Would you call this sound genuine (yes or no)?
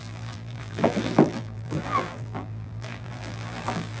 no